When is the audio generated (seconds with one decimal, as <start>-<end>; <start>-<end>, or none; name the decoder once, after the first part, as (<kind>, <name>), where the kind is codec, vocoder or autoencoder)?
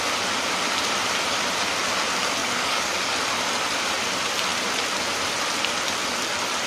2.4-3.1 (codec, DAC)